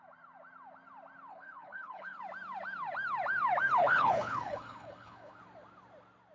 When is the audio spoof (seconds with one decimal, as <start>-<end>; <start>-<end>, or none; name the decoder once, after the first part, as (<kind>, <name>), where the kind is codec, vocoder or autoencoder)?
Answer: 1.3-2.2 (codec, HILCodec); 3.8-5.4